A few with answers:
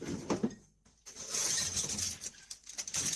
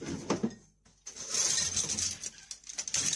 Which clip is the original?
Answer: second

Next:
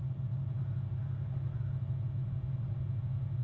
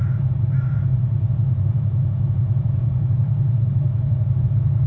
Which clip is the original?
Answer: first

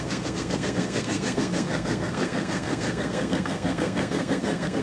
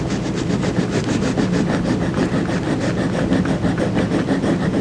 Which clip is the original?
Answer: second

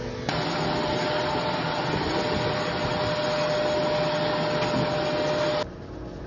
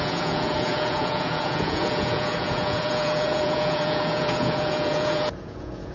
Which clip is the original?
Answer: first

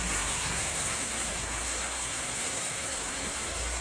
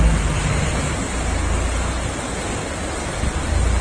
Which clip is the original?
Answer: second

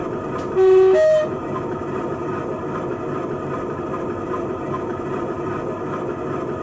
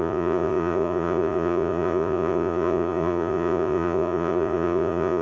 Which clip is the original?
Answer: first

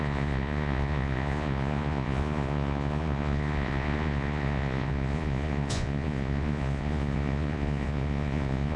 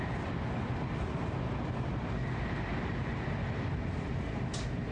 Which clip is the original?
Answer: second